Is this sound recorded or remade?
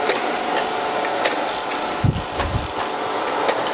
recorded